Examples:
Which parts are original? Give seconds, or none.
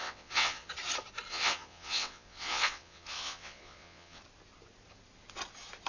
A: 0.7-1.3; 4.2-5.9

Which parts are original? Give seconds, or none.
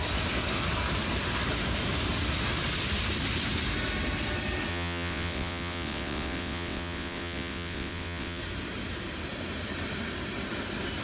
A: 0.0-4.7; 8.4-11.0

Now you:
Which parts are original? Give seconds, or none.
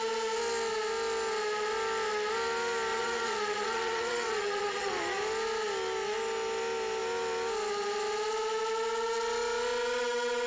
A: 0.0-2.9; 5.0-10.5